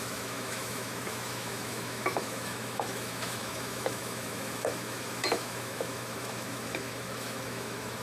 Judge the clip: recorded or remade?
remade